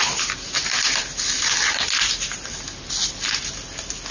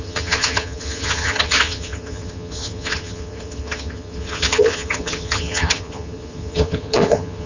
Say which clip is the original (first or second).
first